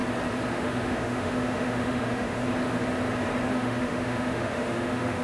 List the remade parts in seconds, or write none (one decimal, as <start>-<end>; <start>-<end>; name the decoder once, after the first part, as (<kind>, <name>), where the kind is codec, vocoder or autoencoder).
0.5-2.4 (autoencoder, DAC-VAE); 3.5-5.2